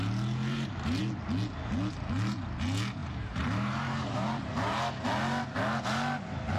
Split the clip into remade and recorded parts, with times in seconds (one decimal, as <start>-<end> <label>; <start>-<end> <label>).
0.0-0.5 recorded; 0.5-1.0 remade; 1.0-3.0 recorded; 3.0-4.5 remade; 4.5-6.6 recorded